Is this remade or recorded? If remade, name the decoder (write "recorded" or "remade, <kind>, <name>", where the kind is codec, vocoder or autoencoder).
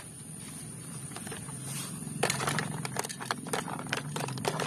remade, vocoder, BigVGAN v2